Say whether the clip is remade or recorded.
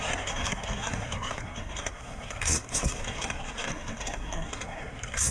remade